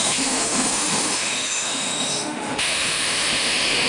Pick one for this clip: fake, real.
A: fake